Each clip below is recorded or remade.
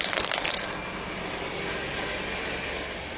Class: recorded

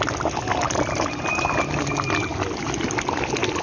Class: recorded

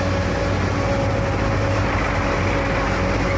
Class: recorded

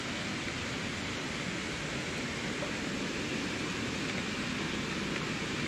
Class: recorded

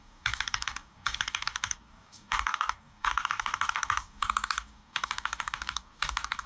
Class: remade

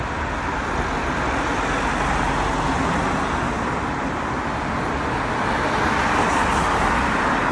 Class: recorded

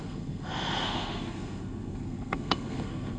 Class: remade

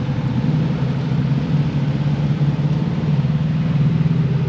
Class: recorded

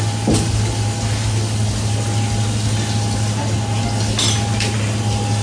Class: recorded